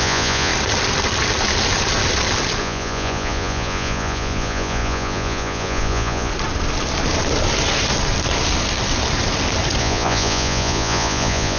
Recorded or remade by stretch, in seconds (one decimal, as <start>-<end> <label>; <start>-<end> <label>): 0.0-0.5 remade; 0.5-2.6 recorded; 2.6-6.3 remade; 6.3-9.8 recorded; 9.8-11.6 remade